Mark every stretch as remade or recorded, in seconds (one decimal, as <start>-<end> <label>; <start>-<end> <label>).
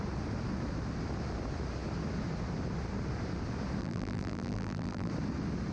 0.0-3.8 recorded; 3.8-5.1 remade; 5.1-5.7 recorded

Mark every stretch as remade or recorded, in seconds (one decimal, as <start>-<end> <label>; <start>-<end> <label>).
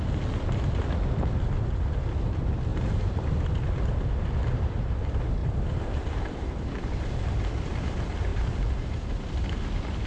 0.0-2.7 recorded; 2.7-3.3 remade; 3.3-5.4 recorded; 5.4-7.2 remade; 7.2-8.3 recorded; 8.3-9.4 remade; 9.4-10.1 recorded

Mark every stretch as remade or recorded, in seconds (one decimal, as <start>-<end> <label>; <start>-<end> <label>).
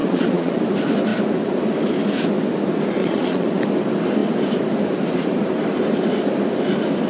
0.0-0.6 remade; 0.6-3.0 recorded; 3.0-3.6 remade; 3.6-7.1 recorded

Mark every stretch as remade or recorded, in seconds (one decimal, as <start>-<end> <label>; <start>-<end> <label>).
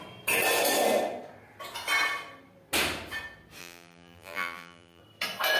0.0-3.6 recorded; 3.6-5.0 remade; 5.0-5.6 recorded